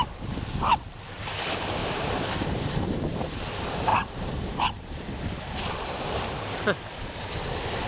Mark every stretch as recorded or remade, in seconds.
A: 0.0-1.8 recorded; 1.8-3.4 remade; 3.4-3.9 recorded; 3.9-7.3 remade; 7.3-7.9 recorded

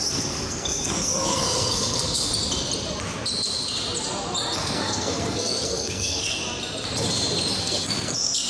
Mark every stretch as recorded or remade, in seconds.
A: 0.0-2.3 remade; 2.3-4.6 recorded; 4.6-6.4 remade; 6.4-7.6 recorded; 7.6-8.5 remade

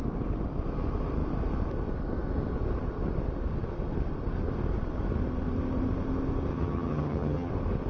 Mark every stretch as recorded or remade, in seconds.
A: 0.0-6.5 recorded; 6.5-7.5 remade; 7.5-7.9 recorded

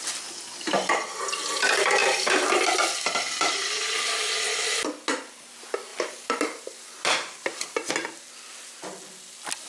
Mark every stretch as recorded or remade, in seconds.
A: 0.0-2.0 recorded; 2.0-2.6 remade; 2.6-5.9 recorded; 5.9-7.9 remade; 7.9-9.7 recorded

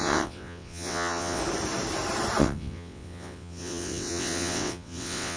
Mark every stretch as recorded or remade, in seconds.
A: 0.0-1.4 remade; 1.4-2.4 recorded; 2.4-5.4 remade

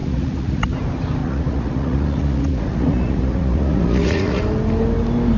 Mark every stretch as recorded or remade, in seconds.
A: 0.0-0.7 remade; 0.7-1.2 recorded; 1.2-4.4 remade; 4.4-5.4 recorded

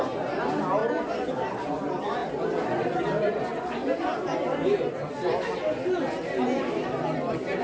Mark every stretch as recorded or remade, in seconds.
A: 0.0-7.6 recorded

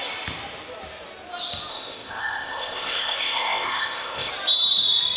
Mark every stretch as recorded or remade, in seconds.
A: 0.0-1.7 recorded; 1.7-4.3 remade; 4.3-5.2 recorded